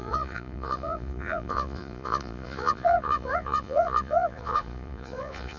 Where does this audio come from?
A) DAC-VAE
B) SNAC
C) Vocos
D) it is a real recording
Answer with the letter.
C